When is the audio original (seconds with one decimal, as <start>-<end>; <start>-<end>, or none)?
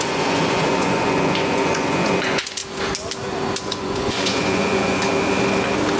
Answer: 2.6-3.6; 5.0-6.0